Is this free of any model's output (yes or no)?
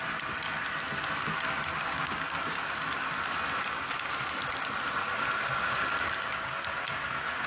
yes